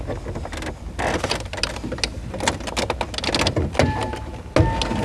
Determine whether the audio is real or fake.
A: real